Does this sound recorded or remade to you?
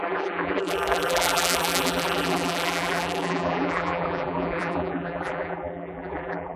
remade